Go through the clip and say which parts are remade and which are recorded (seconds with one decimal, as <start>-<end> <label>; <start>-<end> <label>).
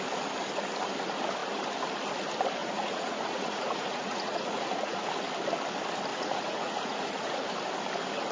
0.0-2.6 recorded; 2.6-5.1 remade; 5.1-6.1 recorded; 6.1-7.5 remade; 7.5-8.3 recorded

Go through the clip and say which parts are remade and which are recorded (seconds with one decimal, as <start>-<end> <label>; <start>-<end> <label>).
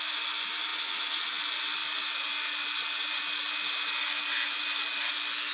0.0-0.7 recorded; 0.7-1.3 remade; 1.3-5.5 recorded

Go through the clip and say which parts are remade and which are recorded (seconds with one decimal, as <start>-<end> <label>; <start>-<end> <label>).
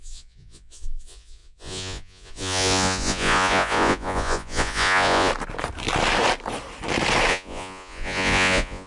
0.0-5.3 remade; 5.3-7.3 recorded; 7.3-8.9 remade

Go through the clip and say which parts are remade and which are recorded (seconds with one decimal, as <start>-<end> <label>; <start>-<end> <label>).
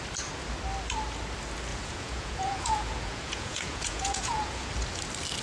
0.0-1.7 recorded; 1.7-4.7 remade; 4.7-5.4 recorded